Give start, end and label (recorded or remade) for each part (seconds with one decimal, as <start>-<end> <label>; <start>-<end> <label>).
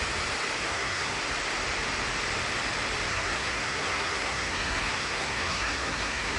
0.0-0.6 recorded; 0.6-1.2 remade; 1.2-3.1 recorded; 3.1-6.4 remade